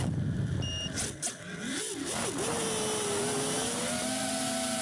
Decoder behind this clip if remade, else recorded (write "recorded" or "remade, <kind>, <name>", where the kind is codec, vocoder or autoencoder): recorded